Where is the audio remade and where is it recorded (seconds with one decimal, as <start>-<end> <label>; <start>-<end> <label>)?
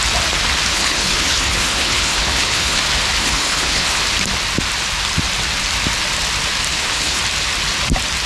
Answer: 0.0-0.7 recorded; 0.7-2.8 remade; 2.8-3.2 recorded; 3.2-4.0 remade; 4.0-6.7 recorded; 6.7-7.2 remade; 7.2-8.3 recorded